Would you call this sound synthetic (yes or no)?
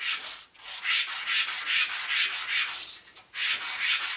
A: no